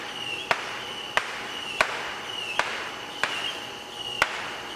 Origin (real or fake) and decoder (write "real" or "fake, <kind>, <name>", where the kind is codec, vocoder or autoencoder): fake, vocoder, BigVGAN v2